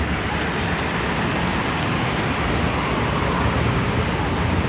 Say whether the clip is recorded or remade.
recorded